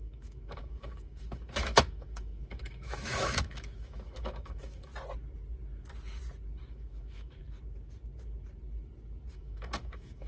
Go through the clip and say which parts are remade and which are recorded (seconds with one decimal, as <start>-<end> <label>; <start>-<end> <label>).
0.0-4.9 remade; 4.9-6.7 recorded; 6.7-7.4 remade; 7.4-9.3 recorded; 9.3-10.3 remade